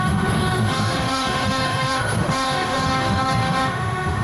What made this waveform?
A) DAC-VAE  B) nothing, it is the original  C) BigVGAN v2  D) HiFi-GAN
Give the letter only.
A